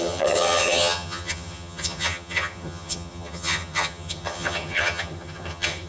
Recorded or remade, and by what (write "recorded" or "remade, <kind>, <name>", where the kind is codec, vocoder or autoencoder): remade, vocoder, HiFi-GAN